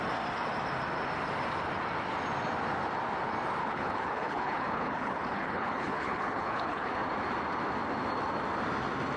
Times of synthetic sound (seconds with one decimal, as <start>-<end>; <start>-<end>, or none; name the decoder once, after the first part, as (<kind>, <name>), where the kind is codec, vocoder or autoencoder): 3.6-6.9 (codec, HILCodec)